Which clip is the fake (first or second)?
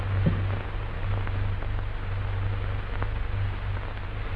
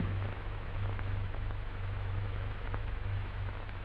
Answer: second